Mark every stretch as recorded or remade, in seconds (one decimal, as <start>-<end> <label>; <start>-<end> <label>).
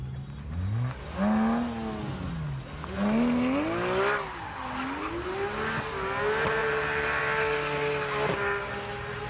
0.0-6.6 recorded; 6.6-7.2 remade; 7.2-9.3 recorded